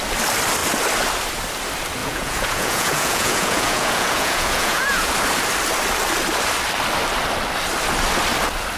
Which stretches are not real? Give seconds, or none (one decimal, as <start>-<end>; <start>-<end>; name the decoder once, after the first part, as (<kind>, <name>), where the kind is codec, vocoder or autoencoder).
2.0-5.1 (vocoder, Vocos)